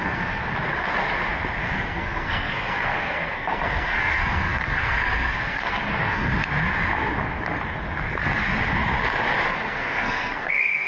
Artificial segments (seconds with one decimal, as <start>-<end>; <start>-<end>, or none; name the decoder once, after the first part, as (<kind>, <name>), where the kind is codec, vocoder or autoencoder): 0.0-0.4 (codec, SNAC); 1.6-6.3; 9.5-10.9